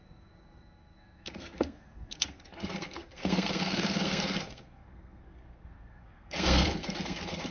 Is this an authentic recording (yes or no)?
no